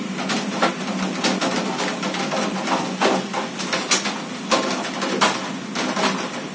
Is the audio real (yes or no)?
yes